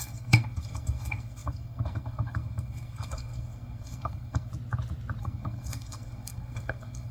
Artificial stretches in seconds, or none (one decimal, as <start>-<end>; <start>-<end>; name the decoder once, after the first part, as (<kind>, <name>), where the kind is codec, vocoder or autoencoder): 0.0-4.5 (codec, SNAC); 5.2-7.1